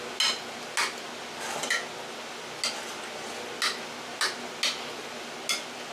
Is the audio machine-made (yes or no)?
no